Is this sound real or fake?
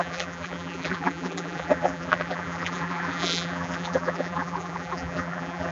fake